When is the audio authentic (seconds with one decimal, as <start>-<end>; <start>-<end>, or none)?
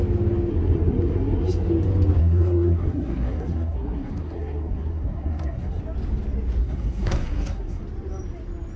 0.0-0.5; 1.7-2.2; 5.8-6.6; 7.8-8.8